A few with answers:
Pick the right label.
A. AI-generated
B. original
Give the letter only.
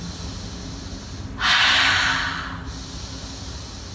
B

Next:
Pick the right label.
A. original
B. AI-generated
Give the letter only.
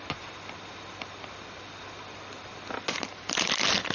A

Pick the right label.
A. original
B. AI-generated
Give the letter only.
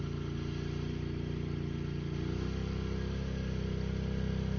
A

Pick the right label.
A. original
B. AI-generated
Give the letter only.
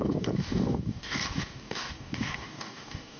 B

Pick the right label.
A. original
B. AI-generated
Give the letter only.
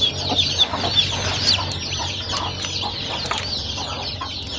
A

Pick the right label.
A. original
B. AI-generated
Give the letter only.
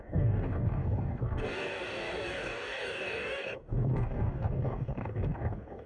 B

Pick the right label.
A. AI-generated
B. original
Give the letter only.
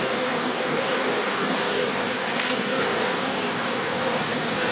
A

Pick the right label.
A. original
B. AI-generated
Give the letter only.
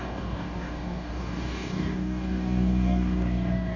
B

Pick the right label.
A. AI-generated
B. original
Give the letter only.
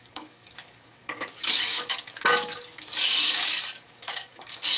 A